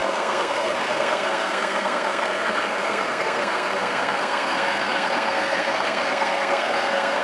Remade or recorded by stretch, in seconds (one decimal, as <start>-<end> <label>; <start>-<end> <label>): 0.0-7.2 remade